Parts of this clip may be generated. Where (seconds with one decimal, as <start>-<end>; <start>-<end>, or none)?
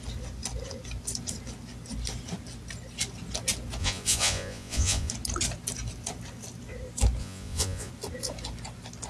3.8-5.1; 7.2-7.9